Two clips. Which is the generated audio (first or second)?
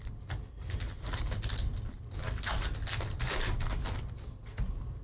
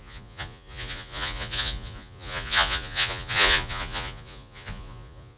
second